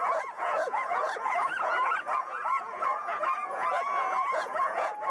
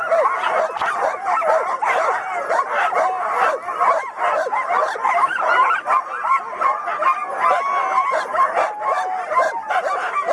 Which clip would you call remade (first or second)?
first